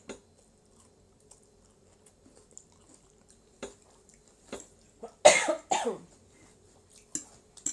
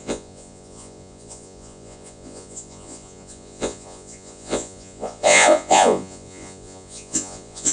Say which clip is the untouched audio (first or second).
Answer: first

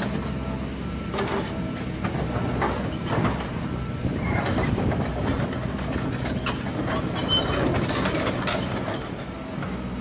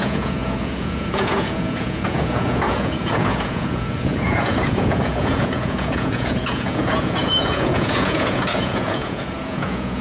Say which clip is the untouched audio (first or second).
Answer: first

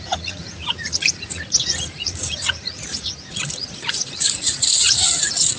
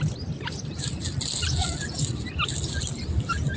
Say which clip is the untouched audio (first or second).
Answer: second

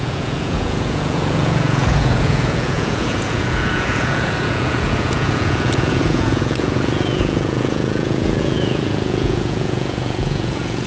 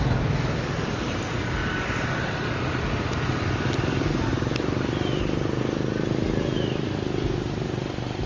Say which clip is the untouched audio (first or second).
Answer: second